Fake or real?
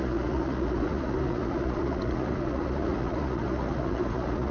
fake